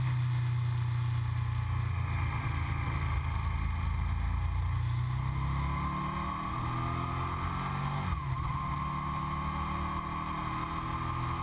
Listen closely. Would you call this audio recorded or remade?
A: recorded